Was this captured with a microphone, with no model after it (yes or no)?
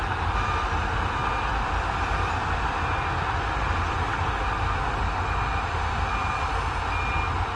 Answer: yes